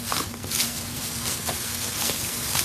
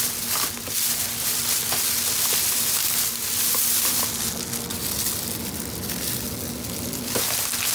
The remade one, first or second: first